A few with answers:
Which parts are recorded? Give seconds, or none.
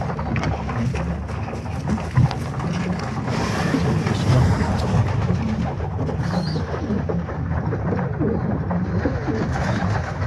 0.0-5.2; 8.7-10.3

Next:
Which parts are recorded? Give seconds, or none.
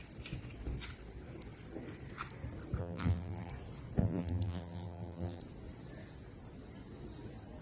0.0-2.8; 3.5-4.0; 5.4-7.6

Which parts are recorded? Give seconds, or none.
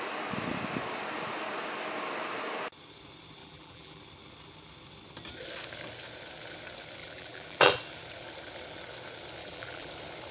0.0-3.4; 4.0-7.0; 7.8-9.4; 9.9-10.3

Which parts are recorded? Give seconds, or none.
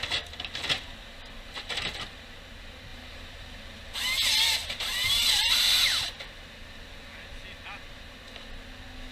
0.0-2.9; 4.1-4.6; 6.0-9.1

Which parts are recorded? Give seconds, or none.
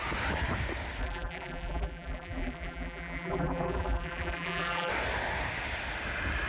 0.0-1.0; 4.9-6.5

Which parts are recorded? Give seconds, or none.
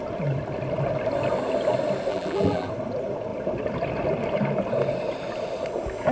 0.0-2.1; 2.7-6.1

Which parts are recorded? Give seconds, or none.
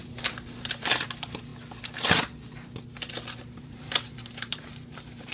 0.0-0.7; 1.5-3.6